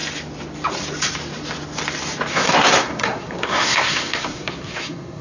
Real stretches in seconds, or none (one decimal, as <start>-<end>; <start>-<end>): 0.0-2.3